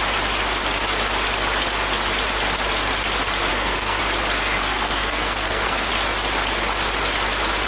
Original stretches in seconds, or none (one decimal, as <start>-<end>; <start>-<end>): 0.0-3.5; 4.0-4.6; 5.9-7.7

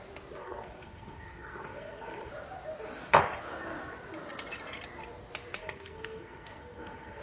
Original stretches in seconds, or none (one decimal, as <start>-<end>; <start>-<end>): 0.0-0.4; 2.3-5.6

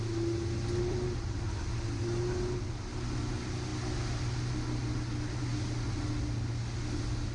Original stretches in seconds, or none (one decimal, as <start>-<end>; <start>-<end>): 0.0-7.3

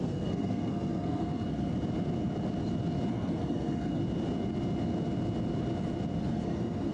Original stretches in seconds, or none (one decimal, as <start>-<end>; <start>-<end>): 1.7-3.1; 4.0-6.2

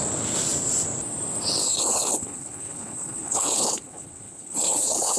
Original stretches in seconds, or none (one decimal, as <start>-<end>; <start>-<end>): 0.0-1.9

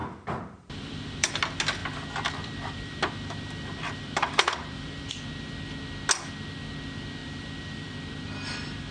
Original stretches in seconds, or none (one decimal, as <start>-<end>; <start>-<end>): 1.3-1.8; 5.1-7.2; 7.9-8.9

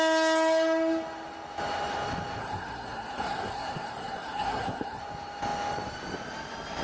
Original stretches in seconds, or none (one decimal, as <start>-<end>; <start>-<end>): 0.0-2.4; 5.0-6.8

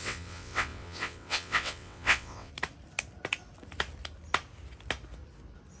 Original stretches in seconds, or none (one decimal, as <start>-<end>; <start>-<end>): 2.5-5.8